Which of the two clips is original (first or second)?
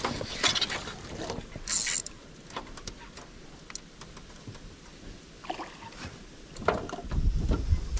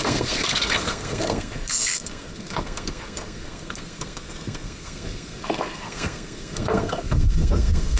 first